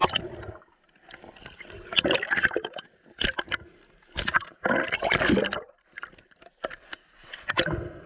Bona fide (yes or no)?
yes